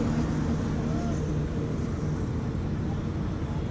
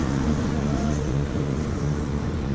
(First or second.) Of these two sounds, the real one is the first